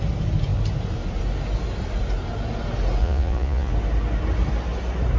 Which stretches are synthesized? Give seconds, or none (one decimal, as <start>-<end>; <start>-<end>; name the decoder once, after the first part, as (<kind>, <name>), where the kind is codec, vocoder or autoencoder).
3.0-3.7 (vocoder, Vocos)